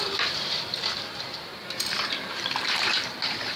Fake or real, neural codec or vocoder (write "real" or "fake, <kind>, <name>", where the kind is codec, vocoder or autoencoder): fake, vocoder, BigVGAN v2